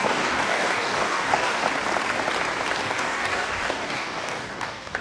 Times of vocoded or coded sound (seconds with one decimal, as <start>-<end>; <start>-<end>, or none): 0.0-1.6; 2.8-5.0